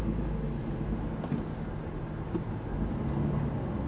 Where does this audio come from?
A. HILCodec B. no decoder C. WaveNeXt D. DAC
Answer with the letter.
B